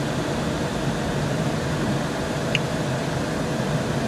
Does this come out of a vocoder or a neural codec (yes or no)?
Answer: no